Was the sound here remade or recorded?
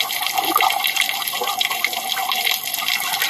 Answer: recorded